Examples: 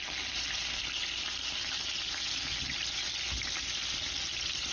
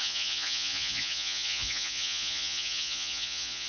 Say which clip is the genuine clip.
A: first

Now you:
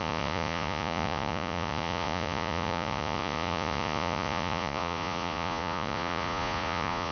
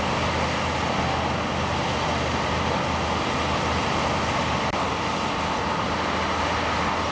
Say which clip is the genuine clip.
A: second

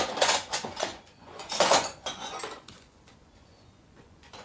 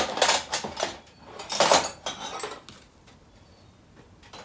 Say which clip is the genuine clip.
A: second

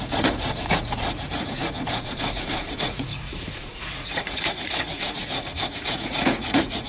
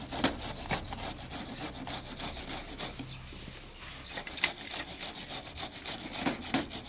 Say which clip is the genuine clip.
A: second